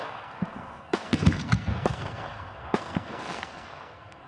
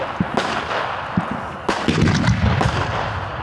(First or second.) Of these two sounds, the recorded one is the second